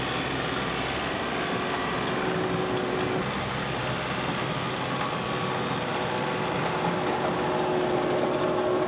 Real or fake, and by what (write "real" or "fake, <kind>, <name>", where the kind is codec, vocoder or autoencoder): real